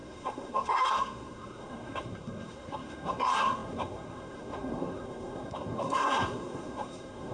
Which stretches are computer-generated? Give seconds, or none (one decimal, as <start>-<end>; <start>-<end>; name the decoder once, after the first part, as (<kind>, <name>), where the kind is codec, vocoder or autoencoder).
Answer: 0.0-7.3 (codec, SNAC)